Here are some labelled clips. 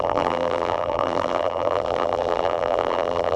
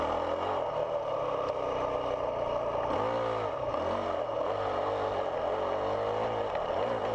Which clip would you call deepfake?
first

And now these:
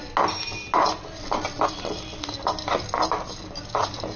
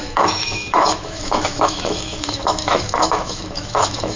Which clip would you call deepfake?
second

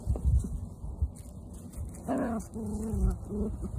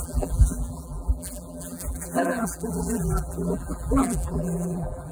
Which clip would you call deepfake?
second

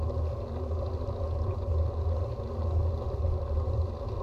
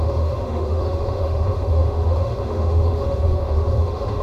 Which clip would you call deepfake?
second